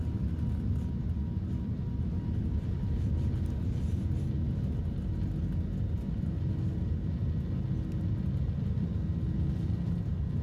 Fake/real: real